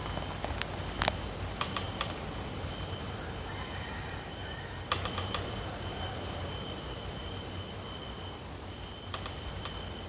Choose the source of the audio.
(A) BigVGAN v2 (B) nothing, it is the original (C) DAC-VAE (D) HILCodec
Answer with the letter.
A